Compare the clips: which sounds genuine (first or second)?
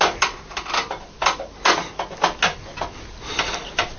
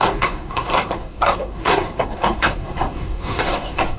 first